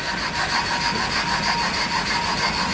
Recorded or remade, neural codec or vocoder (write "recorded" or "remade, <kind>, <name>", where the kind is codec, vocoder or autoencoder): recorded